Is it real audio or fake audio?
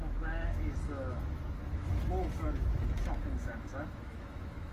fake